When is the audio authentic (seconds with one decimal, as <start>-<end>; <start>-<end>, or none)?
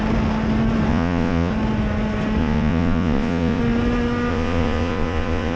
0.0-0.9; 1.5-2.4; 3.6-4.3